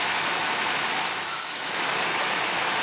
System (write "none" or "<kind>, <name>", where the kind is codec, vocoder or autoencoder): autoencoder, DAC-VAE